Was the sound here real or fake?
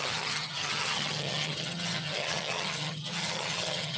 fake